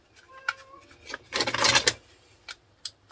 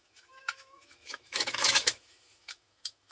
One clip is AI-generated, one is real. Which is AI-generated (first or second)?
second